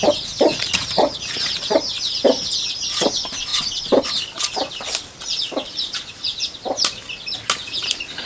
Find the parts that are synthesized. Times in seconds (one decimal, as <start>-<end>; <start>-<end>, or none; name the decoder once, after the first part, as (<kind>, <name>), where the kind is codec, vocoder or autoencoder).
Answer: 0.5-1.7 (vocoder, Vocos)